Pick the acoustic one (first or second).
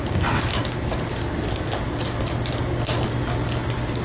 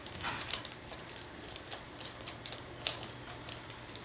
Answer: first